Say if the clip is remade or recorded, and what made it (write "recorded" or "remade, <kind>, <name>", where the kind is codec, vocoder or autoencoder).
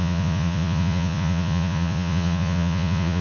remade, vocoder, Vocos